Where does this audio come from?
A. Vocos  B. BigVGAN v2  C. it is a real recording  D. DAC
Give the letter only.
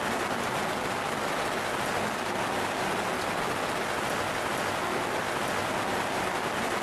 C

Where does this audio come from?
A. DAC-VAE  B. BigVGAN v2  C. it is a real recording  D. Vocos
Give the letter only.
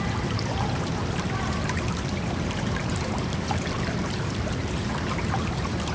B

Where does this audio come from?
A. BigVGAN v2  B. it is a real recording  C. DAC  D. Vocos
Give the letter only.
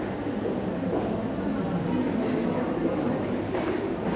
B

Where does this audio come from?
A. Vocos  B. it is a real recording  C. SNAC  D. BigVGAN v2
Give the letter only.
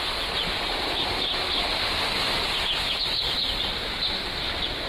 D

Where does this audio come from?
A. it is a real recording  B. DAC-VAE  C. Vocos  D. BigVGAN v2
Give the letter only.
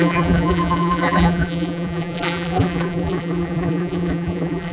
D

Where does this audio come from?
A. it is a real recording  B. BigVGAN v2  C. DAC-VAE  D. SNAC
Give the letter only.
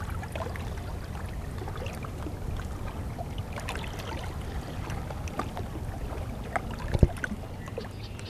A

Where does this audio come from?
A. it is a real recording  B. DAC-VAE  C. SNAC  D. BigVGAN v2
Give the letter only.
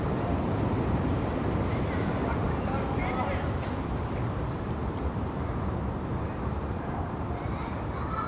D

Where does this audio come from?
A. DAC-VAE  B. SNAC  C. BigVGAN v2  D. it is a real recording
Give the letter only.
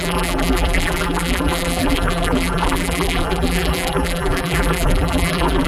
C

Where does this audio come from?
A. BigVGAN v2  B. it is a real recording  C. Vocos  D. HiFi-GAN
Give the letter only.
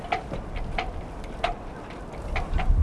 B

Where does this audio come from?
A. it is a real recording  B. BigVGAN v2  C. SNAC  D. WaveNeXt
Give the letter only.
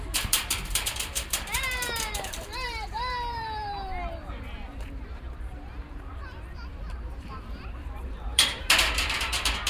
B